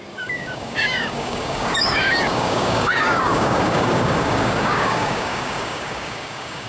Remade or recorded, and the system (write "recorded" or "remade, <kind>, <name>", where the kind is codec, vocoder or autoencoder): remade, codec, DAC